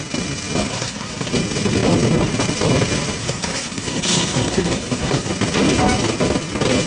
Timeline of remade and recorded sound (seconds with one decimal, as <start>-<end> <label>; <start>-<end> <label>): 0.0-0.7 recorded; 0.7-1.3 remade; 1.3-3.2 recorded; 3.2-5.3 remade; 5.3-6.9 recorded